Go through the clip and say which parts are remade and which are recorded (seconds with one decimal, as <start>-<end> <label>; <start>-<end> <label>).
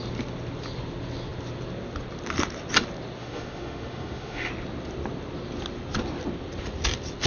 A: 0.0-3.2 recorded; 3.2-4.5 remade; 4.5-7.3 recorded